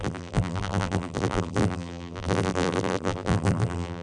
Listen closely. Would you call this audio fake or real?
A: fake